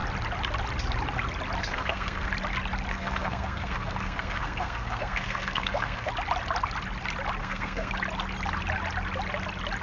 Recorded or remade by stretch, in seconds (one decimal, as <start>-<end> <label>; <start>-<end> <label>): 0.0-1.6 recorded; 1.6-2.3 remade; 2.3-2.9 recorded; 2.9-6.1 remade; 6.1-7.4 recorded; 7.4-7.9 remade; 7.9-9.8 recorded